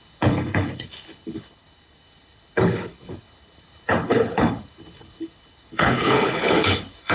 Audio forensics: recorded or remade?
remade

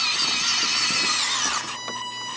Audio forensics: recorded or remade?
recorded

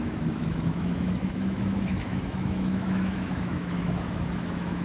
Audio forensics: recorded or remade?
remade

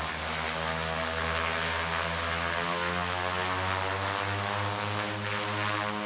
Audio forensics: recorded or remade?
recorded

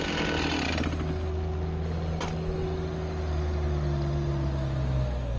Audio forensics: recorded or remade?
recorded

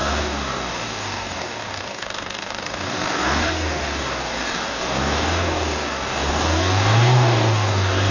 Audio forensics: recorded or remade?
remade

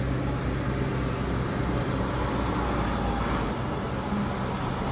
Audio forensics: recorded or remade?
recorded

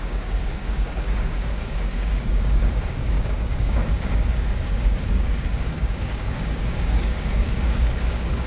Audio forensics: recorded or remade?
remade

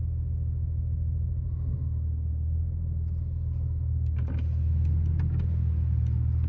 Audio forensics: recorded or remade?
recorded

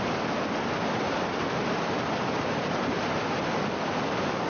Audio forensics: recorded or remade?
recorded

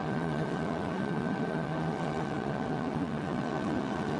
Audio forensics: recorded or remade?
remade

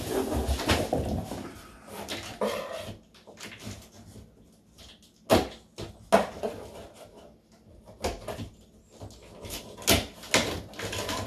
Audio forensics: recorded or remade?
recorded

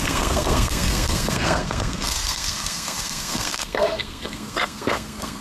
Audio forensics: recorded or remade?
remade